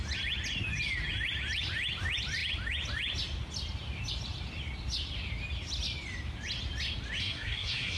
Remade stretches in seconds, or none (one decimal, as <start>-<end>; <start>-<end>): 7.2-8.0

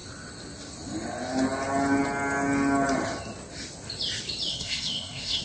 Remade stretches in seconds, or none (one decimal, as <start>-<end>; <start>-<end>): 4.5-5.4

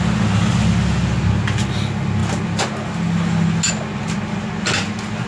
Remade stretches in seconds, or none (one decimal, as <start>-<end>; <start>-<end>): none

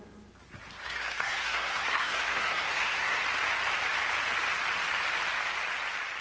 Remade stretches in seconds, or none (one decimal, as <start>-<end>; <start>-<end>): 0.8-3.2

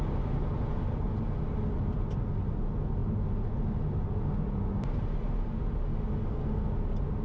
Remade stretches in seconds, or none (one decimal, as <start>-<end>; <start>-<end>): 6.2-6.7

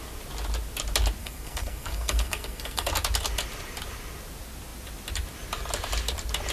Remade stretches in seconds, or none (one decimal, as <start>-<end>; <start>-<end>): 1.2-2.9